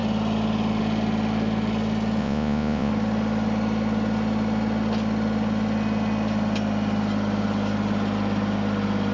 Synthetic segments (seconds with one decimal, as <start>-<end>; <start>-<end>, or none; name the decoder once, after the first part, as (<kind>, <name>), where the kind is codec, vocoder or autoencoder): 2.2-2.9 (vocoder, Vocos)